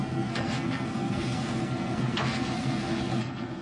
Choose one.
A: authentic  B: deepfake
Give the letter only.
B